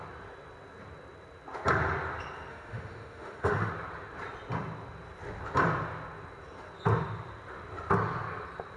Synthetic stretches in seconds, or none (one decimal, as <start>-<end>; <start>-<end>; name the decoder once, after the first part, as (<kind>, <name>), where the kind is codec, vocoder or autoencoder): 2.5-3.7 (autoencoder, DAC-VAE)